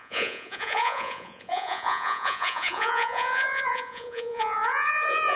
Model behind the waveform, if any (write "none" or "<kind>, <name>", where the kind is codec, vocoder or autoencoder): vocoder, Vocos